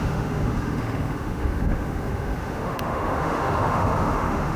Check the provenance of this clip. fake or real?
fake